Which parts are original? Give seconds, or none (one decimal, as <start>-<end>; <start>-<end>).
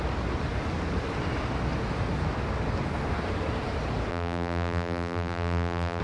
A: 0.0-4.1